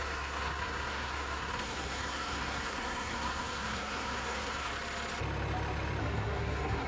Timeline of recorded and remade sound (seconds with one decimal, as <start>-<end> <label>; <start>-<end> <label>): 0.0-4.7 remade; 4.7-6.0 recorded; 6.0-6.9 remade